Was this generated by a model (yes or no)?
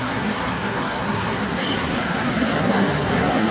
yes